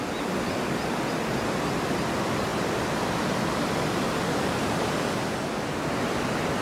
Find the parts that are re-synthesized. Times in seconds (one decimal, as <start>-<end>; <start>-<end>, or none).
none